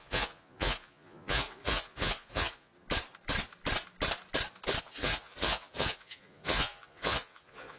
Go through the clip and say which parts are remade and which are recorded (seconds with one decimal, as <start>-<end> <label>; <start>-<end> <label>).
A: 0.0-2.7 remade; 2.7-4.8 recorded; 4.8-7.8 remade